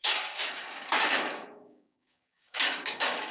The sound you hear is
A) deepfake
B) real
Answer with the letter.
A